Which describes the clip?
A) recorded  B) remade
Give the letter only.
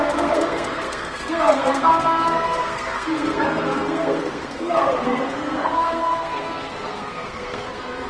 B